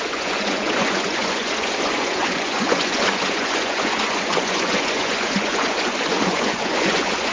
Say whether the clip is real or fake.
fake